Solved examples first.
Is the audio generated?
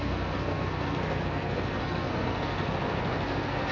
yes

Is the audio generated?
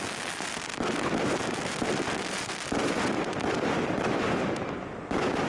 yes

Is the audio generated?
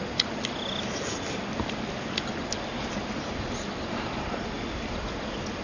no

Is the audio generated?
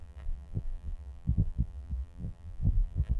yes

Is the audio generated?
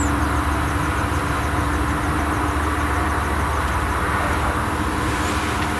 no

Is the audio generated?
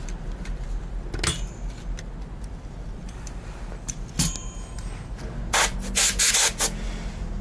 no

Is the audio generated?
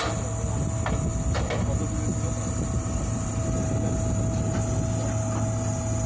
no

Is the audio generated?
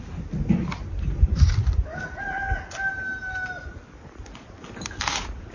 no